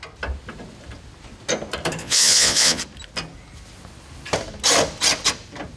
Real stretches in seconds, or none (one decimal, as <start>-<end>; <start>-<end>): 0.0-2.0; 2.8-5.8